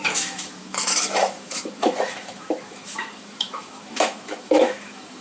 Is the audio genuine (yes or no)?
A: no